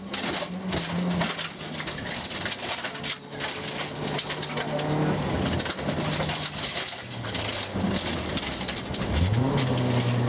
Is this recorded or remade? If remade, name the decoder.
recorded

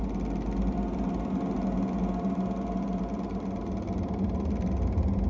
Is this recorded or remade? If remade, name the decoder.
recorded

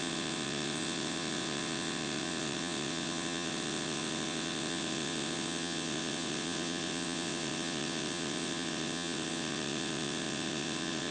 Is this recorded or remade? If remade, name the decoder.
remade, vocoder, WaveNeXt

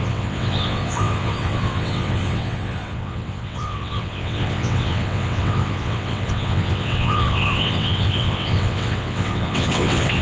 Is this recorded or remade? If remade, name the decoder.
remade, vocoder, WaveNeXt